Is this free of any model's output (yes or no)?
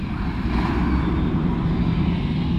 yes